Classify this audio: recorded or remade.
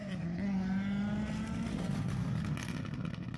recorded